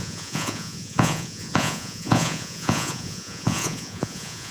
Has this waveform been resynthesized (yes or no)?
yes